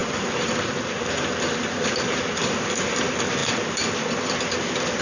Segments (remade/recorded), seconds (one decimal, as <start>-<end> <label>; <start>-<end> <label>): 0.0-0.8 remade; 0.8-2.4 recorded; 2.4-3.0 remade; 3.0-5.0 recorded